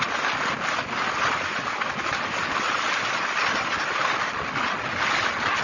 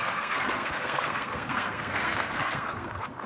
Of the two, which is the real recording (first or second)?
first